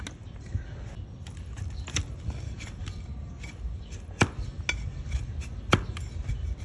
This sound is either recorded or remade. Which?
recorded